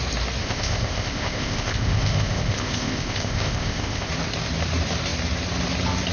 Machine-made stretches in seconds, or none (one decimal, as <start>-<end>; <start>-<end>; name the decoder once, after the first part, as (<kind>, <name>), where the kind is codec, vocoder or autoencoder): 0.4-4.1 (codec, ZipCodec)